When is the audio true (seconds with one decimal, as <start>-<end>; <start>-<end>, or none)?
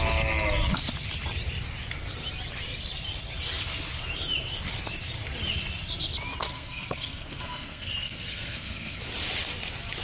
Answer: 0.0-6.5; 9.0-10.0